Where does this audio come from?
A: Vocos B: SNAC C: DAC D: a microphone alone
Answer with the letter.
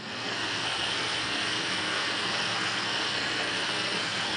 B